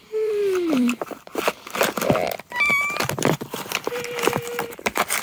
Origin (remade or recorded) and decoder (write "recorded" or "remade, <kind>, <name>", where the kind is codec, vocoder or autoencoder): remade, vocoder, BigVGAN v2